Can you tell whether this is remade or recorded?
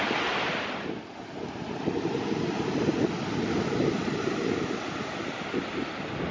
recorded